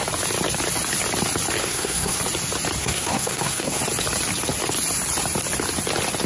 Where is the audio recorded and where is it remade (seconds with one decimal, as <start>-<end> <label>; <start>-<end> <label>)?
0.0-1.6 recorded; 1.6-2.2 remade; 2.2-2.8 recorded; 2.8-3.8 remade; 3.8-6.3 recorded

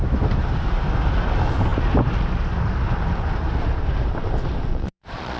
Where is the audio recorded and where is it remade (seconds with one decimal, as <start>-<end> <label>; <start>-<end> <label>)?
0.0-4.7 recorded; 4.7-5.4 remade

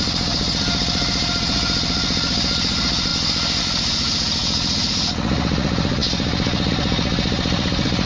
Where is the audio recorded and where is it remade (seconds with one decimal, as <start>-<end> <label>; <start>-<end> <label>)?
0.0-3.1 remade; 3.1-3.6 recorded; 3.6-8.1 remade

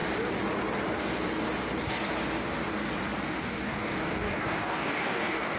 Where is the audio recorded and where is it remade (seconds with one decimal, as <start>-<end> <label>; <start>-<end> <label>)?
0.0-3.4 recorded; 3.4-5.6 remade

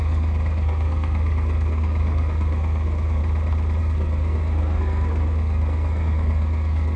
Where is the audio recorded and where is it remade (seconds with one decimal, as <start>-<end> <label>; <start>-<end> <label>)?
0.0-3.2 remade; 3.2-3.8 recorded; 3.8-7.0 remade

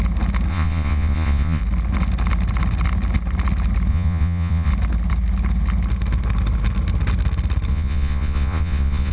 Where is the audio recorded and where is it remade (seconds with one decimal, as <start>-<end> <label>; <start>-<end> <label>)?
0.0-0.5 recorded; 0.5-1.6 remade; 1.6-3.9 recorded; 3.9-4.7 remade; 4.7-7.7 recorded; 7.7-9.1 remade